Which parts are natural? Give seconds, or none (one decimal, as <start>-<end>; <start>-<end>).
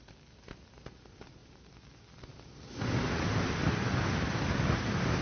0.0-5.2